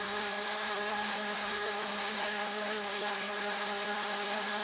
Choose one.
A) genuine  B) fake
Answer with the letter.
B